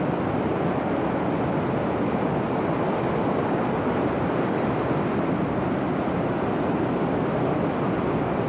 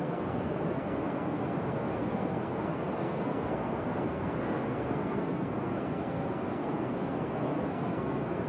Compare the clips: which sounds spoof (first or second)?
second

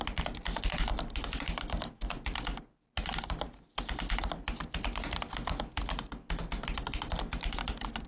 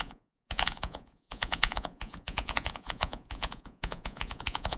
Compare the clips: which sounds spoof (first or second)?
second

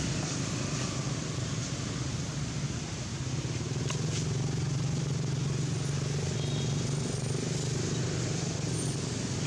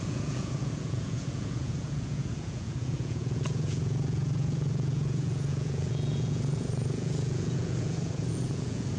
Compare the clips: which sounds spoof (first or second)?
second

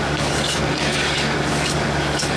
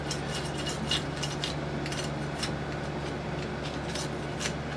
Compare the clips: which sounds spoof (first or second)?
first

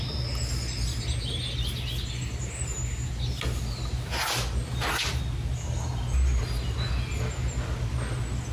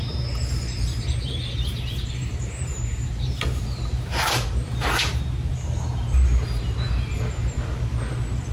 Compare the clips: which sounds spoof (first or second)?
second